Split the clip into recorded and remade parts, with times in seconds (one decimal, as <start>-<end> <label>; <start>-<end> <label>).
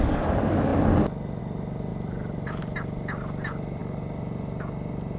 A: 0.0-1.9 recorded; 1.9-2.6 remade; 2.6-5.2 recorded